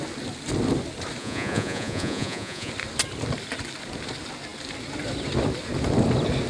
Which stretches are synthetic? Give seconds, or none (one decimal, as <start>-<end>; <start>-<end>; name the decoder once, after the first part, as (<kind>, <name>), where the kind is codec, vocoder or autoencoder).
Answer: 1.2-2.7 (vocoder, Vocos)